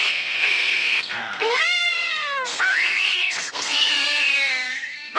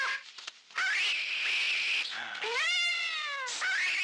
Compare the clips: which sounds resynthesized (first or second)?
first